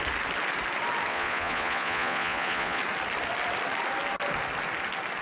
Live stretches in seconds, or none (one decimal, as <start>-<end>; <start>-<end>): 0.0-1.1; 2.8-5.2